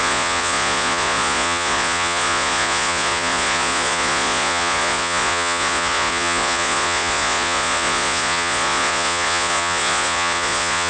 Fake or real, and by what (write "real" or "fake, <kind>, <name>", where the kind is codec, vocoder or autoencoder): fake, vocoder, Vocos